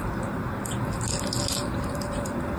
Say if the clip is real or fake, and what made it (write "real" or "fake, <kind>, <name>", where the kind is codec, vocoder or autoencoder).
real